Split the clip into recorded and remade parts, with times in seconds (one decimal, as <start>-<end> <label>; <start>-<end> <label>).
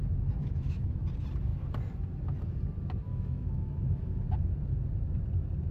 0.0-0.4 recorded; 0.4-1.0 remade; 1.0-3.1 recorded; 3.1-4.2 remade; 4.2-5.7 recorded